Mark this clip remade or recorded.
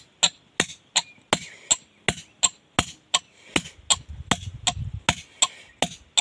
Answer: recorded